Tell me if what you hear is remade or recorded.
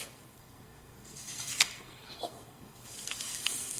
remade